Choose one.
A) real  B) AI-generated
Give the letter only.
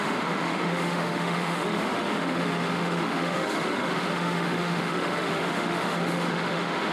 B